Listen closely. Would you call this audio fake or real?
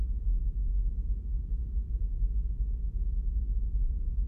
fake